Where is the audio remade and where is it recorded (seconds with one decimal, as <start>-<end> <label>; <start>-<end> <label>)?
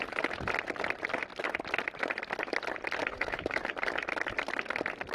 0.0-3.0 recorded; 3.0-3.7 remade; 3.7-5.1 recorded